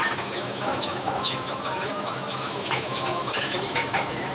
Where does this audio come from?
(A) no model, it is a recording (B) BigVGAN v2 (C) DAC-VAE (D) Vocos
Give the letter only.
C